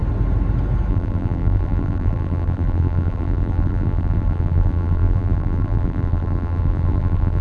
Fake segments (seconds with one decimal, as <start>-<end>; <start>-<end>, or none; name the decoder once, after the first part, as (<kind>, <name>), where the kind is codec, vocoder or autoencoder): 0.9-7.4 (vocoder, BigVGAN v2)